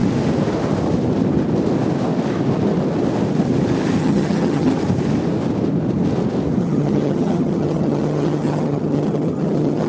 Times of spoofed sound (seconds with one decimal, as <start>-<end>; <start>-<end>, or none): 4.0-4.7; 6.6-9.9